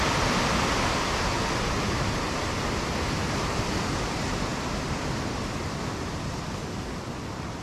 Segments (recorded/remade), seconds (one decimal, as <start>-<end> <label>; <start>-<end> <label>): 0.0-7.6 recorded